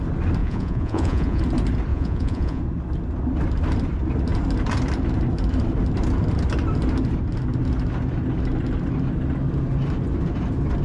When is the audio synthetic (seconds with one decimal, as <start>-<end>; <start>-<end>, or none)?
0.4-1.4; 1.9-2.6